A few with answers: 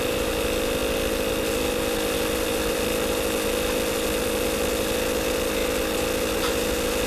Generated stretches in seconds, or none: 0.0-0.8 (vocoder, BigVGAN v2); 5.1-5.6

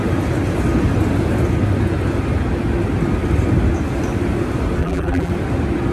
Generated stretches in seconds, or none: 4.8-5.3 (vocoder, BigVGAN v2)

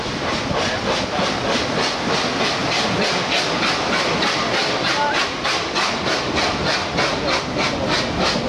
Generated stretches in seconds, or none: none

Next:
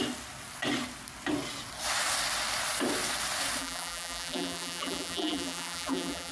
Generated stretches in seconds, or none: 3.6-6.3 (vocoder, BigVGAN v2)

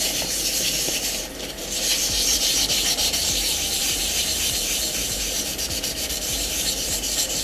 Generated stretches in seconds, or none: 0.0-7.4 (vocoder, BigVGAN v2)